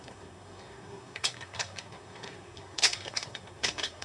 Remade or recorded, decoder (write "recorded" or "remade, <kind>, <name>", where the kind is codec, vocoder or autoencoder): remade, codec, SNAC